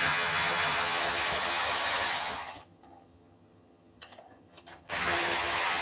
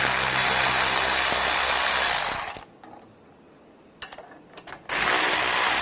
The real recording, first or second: second